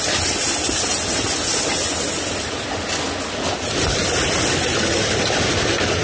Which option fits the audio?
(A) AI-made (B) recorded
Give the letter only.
B